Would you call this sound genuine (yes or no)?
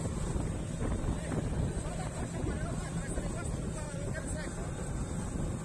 yes